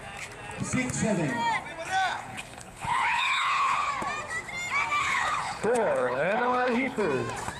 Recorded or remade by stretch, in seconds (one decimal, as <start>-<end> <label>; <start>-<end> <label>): 0.0-2.1 recorded; 2.1-3.9 remade; 3.9-5.0 recorded; 5.0-7.0 remade; 7.0-7.6 recorded